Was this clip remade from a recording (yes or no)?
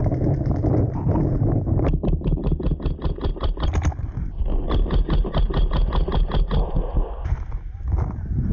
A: no